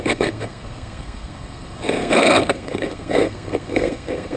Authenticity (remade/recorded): remade